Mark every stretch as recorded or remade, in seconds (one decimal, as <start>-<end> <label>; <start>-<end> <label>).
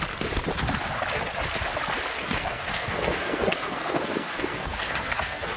0.0-2.1 recorded; 2.1-5.6 remade